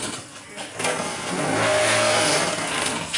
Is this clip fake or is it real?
fake